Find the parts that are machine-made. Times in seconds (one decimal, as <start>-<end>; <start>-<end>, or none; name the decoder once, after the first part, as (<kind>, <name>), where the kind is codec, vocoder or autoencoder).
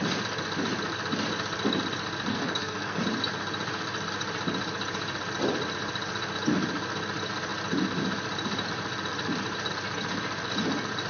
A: 2.3-3.0 (codec, SNAC)